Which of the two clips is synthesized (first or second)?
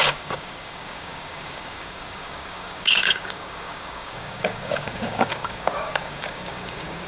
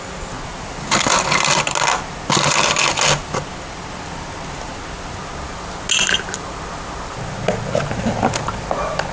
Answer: first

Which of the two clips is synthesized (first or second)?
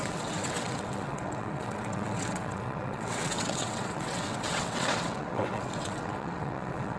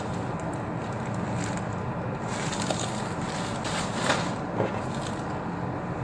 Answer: first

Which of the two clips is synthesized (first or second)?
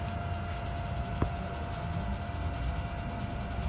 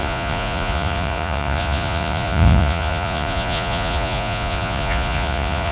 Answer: second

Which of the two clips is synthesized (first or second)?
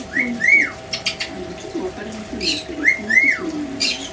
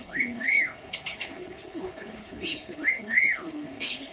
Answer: second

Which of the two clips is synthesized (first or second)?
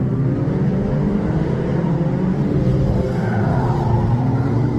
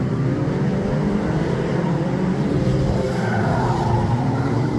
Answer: second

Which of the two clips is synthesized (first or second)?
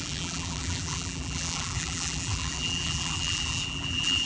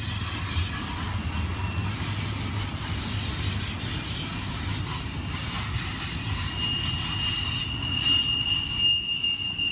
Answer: first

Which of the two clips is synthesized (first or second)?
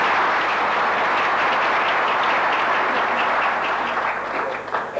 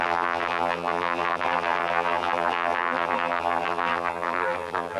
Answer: second